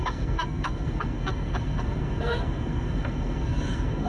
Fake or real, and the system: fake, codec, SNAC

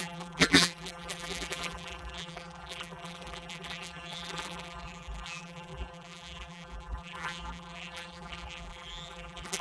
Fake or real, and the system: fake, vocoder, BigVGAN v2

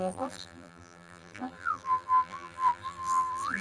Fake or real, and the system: fake, vocoder, BigVGAN v2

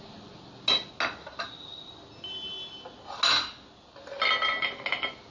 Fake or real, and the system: real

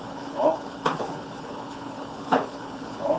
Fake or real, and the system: fake, codec, HILCodec